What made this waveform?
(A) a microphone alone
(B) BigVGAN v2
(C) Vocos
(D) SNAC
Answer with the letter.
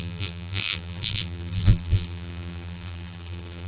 B